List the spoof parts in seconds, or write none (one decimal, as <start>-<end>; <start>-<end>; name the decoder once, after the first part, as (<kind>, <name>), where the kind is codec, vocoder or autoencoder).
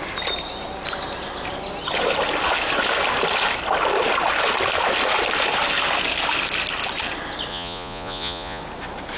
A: 7.5-8.6 (vocoder, Vocos)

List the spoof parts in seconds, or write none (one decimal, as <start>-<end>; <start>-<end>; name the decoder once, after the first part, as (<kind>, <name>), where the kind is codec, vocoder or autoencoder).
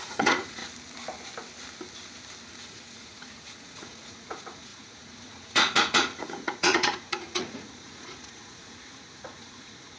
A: 0.0-0.6 (vocoder, Vocos); 2.6-10.0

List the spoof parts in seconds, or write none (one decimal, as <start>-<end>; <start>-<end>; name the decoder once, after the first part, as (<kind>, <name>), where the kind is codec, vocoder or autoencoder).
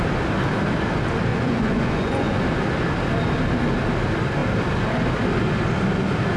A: 1.3-2.4 (vocoder, Vocos)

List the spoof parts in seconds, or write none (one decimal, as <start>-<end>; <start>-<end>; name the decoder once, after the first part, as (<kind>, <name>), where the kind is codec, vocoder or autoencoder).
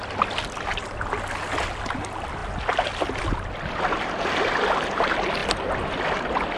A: none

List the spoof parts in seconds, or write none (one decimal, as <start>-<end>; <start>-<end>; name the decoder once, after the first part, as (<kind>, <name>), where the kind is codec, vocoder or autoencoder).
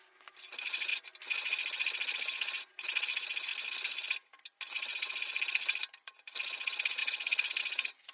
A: 0.0-0.9 (vocoder, BigVGAN v2); 2.6-3.5; 4.6-7.0; 7.6-8.1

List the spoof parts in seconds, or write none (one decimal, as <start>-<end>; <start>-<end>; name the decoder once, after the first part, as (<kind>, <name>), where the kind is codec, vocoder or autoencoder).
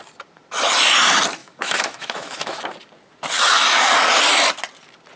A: 1.4-2.6 (autoencoder, DAC-VAE)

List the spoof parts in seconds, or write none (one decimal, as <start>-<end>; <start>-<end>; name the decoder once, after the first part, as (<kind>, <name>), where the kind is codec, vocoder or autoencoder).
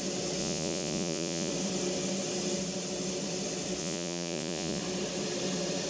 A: 0.4-1.5 (vocoder, Vocos); 3.8-4.8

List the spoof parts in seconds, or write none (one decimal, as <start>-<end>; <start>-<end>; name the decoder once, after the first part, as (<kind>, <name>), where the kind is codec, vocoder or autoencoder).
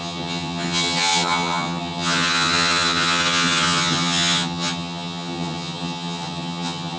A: 0.0-7.0 (vocoder, HiFi-GAN)